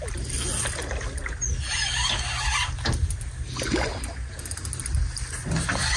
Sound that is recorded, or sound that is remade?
recorded